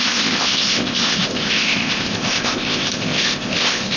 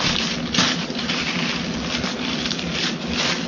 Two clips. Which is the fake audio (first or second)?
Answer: first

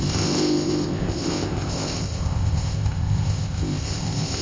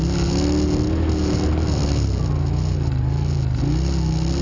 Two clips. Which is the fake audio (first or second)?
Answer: first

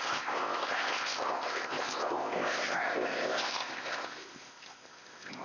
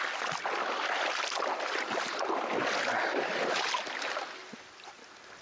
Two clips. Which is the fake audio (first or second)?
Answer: first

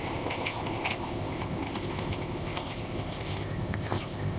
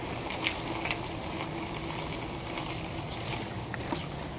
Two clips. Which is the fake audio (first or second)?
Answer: first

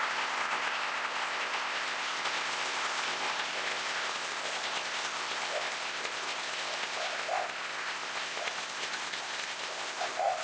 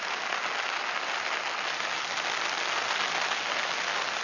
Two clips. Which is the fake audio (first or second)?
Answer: first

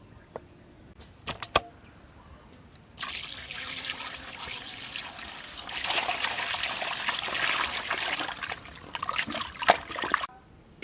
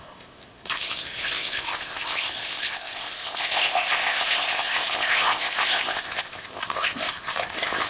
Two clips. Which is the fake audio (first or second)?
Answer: second